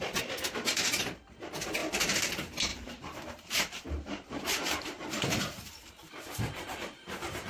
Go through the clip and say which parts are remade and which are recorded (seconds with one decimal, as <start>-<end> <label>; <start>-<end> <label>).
0.0-1.8 recorded; 1.8-2.3 remade; 2.3-2.7 recorded; 2.7-7.5 remade